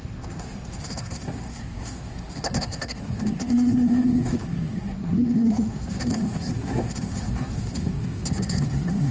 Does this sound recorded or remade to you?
remade